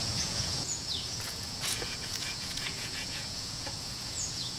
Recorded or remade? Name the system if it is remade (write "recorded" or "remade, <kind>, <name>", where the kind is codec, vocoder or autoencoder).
remade, vocoder, Vocos